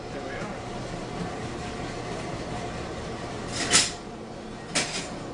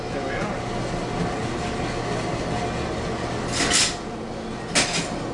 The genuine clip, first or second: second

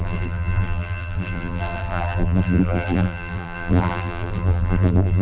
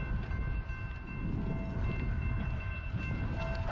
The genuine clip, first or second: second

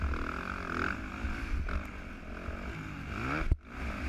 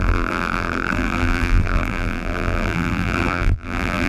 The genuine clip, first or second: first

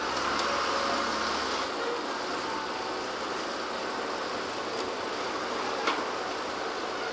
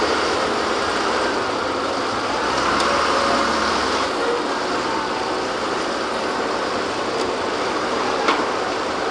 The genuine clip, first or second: first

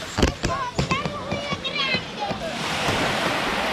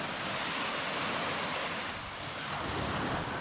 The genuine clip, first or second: second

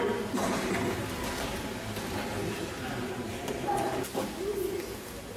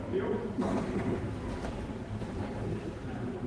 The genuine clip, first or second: first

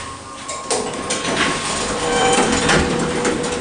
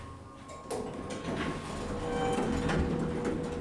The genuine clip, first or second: second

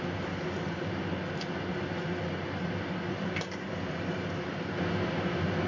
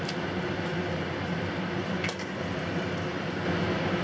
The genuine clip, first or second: first